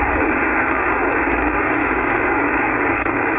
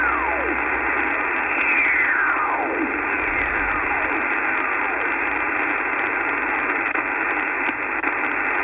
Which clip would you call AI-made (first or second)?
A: first